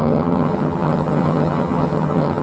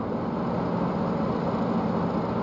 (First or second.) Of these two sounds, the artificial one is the first